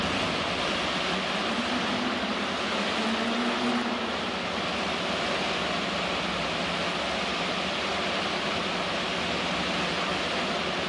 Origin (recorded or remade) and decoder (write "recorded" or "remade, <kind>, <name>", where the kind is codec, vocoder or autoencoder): recorded